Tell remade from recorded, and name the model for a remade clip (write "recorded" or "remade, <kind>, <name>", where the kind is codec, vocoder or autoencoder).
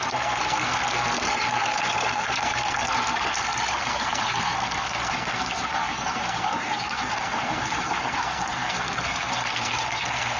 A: remade, codec, SNAC